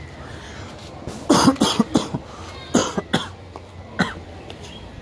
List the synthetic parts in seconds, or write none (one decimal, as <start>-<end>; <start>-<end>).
none